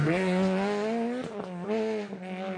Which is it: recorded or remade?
recorded